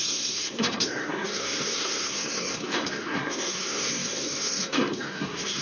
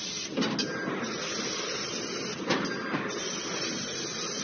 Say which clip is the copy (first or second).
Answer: first